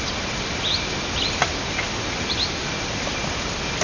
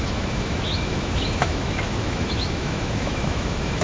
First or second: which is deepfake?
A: second